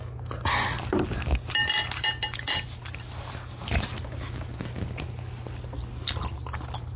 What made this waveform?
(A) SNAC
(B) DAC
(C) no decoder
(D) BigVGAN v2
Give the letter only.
C